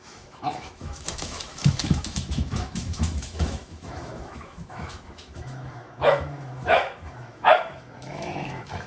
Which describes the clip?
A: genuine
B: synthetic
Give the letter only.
B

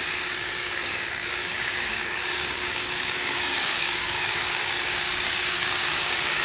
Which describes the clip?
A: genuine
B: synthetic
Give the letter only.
B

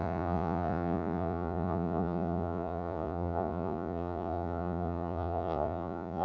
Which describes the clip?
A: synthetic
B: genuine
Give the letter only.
A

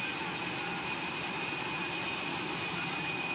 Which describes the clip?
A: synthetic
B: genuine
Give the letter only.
B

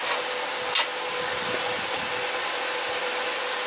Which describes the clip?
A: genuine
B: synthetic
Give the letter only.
A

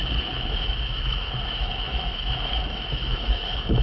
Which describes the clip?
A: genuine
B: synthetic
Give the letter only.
B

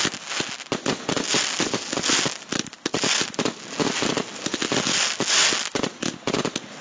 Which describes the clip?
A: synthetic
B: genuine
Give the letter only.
B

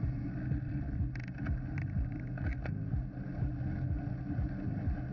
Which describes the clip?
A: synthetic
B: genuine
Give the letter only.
B